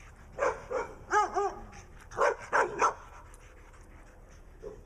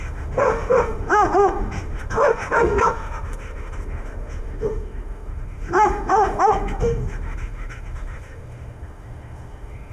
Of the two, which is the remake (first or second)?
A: second